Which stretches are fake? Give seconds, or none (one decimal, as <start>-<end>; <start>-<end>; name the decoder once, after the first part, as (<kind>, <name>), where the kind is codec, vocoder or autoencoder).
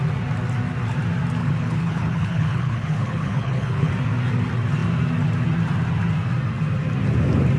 1.4-3.9 (codec, HILCodec)